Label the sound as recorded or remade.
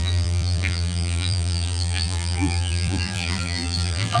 remade